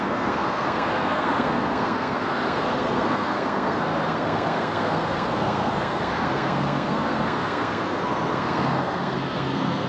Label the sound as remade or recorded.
remade